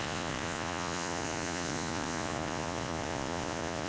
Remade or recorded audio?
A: remade